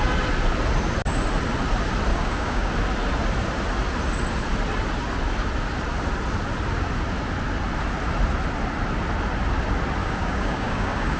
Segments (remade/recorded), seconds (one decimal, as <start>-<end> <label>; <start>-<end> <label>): 0.0-2.1 recorded; 2.1-2.7 remade; 2.7-10.0 recorded; 10.0-11.2 remade